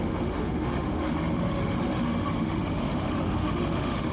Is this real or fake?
fake